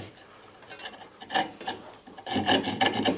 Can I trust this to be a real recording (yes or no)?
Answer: yes